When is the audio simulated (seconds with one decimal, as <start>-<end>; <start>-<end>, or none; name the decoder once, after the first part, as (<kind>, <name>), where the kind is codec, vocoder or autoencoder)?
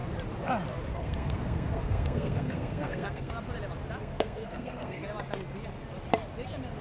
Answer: 0.9-3.3 (codec, SNAC); 4.0-5.0